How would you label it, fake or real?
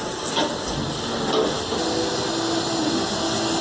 real